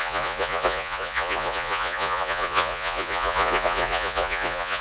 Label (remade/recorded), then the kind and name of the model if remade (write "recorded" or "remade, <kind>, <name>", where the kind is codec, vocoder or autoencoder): remade, vocoder, Vocos